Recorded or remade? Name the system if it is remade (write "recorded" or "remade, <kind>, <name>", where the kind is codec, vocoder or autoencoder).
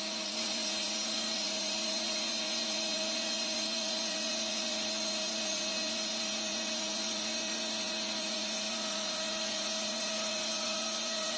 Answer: remade, vocoder, Vocos